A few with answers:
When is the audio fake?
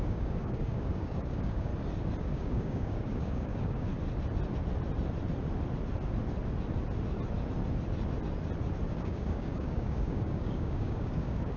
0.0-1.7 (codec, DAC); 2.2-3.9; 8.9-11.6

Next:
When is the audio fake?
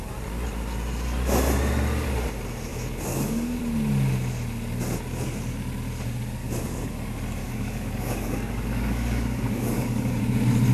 2.7-3.6 (codec, DAC); 6.4-6.9; 7.4-10.2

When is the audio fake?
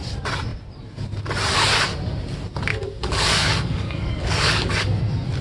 2.7-5.0 (codec, DAC)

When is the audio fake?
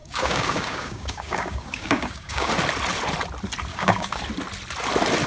0.0-2.5 (codec, DAC); 3.7-4.2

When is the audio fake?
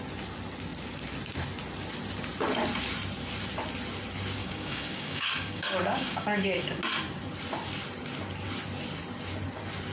4.4-6.8 (codec, DAC)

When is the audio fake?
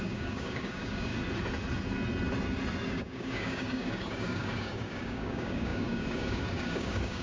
0.0-1.1 (codec, DAC); 2.9-7.2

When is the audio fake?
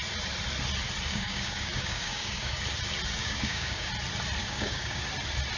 1.1-2.6 (codec, DAC); 3.2-3.9; 4.4-5.0